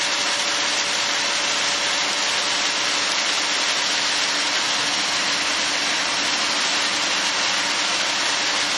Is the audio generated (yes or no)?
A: no